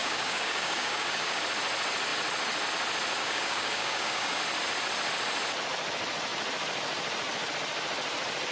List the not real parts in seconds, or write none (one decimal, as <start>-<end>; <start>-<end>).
0.0-1.4; 3.2-4.4